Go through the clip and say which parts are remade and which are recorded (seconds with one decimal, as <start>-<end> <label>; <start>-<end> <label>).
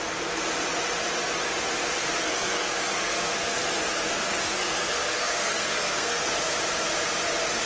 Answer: 0.0-2.0 recorded; 2.0-6.3 remade; 6.3-7.7 recorded